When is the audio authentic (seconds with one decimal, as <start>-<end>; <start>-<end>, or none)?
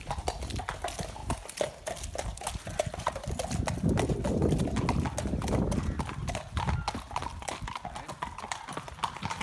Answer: 0.0-9.4